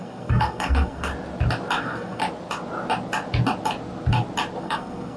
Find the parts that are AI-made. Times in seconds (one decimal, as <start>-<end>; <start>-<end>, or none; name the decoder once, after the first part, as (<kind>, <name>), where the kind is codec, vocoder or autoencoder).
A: 0.0-1.1 (codec, SNAC); 1.8-2.2; 4.6-5.2